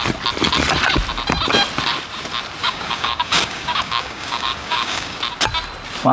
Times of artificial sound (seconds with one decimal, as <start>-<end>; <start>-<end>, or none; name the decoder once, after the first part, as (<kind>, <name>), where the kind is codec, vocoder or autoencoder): 2.6-5.2 (codec, DAC)